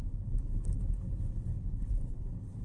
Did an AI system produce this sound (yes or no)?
yes